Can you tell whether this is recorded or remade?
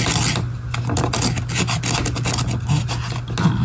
recorded